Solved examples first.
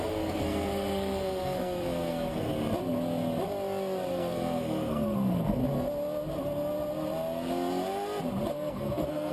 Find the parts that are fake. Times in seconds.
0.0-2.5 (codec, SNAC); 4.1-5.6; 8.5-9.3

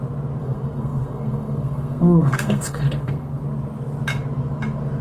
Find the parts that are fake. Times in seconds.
0.4-3.4 (codec, SNAC)